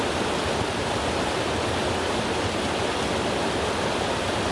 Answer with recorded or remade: recorded